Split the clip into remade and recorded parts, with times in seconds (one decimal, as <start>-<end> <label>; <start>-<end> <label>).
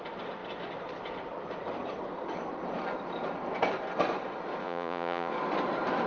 0.0-4.6 recorded; 4.6-5.3 remade; 5.3-6.1 recorded